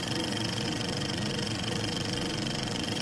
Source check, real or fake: fake